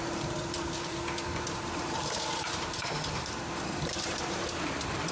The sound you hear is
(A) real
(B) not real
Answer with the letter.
B